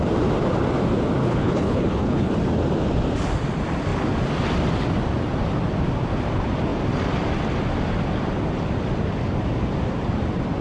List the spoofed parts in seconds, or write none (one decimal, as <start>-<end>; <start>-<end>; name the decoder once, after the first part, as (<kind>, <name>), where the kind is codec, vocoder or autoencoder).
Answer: 1.2-2.3 (codec, HILCodec)